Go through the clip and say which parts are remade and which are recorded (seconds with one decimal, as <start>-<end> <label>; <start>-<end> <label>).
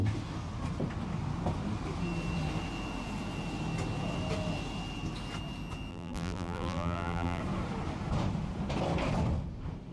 0.0-5.9 recorded; 5.9-7.4 remade; 7.4-9.9 recorded